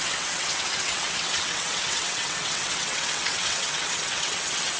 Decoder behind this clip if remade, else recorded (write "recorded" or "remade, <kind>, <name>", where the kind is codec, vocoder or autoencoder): remade, vocoder, WaveNeXt